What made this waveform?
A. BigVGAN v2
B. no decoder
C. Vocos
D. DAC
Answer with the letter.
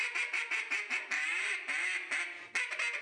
B